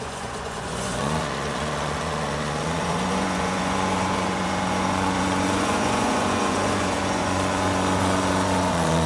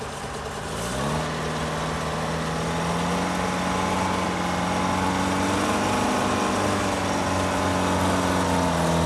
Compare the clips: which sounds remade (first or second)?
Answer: first